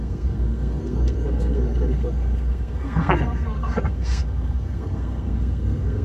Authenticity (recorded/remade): remade